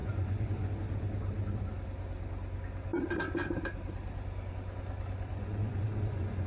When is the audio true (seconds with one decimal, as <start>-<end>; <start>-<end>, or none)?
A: 0.7-5.3